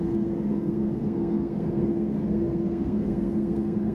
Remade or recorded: remade